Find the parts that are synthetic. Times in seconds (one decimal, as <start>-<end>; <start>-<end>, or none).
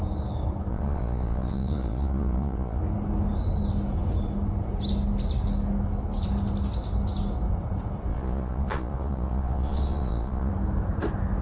0.7-2.8; 8.1-10.5